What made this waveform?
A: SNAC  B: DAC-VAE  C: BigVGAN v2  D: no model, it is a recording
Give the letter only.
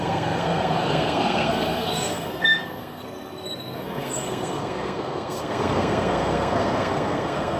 A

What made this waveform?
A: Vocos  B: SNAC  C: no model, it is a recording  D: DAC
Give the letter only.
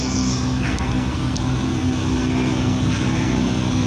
B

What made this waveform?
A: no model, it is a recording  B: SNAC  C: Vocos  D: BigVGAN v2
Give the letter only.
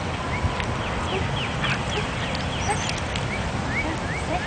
A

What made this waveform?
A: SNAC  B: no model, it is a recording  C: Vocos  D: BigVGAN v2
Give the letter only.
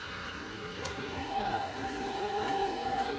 A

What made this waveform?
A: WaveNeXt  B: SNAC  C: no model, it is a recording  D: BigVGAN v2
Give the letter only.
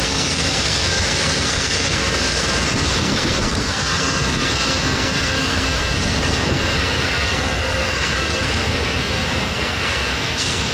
B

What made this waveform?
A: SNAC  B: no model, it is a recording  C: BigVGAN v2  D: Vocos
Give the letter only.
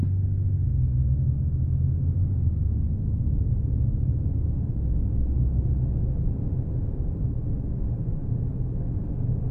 B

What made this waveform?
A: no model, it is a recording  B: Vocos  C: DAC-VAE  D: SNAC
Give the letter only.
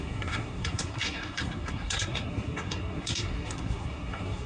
D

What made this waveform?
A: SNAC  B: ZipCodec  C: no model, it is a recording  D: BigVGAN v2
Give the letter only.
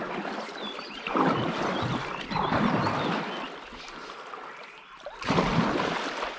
C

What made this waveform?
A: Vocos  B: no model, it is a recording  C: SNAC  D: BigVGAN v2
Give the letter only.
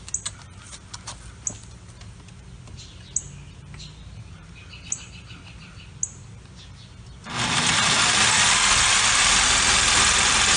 B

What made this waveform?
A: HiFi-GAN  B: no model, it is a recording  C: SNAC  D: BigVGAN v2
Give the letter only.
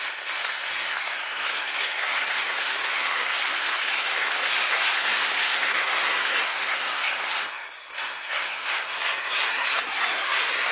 C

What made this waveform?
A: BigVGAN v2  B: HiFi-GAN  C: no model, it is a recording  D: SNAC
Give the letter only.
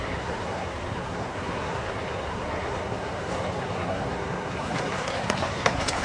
D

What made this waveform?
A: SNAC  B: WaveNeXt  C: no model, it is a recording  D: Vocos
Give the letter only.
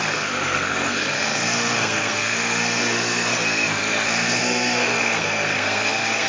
A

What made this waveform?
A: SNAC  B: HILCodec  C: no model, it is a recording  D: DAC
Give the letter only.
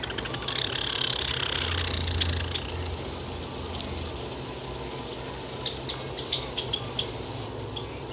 C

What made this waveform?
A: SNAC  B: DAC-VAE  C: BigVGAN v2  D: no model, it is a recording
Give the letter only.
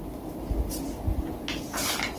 D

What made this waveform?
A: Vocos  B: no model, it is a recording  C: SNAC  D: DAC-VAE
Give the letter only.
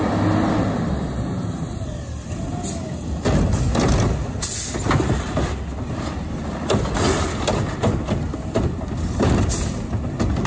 B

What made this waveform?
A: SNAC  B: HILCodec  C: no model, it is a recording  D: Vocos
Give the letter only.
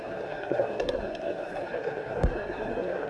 A